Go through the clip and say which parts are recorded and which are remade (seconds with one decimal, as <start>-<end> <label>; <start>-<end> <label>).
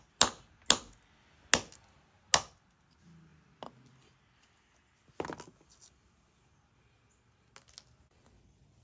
0.0-8.8 recorded